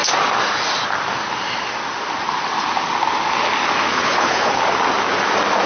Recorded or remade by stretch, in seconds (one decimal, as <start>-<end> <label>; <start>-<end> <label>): 0.0-3.9 recorded; 3.9-4.6 remade; 4.6-5.7 recorded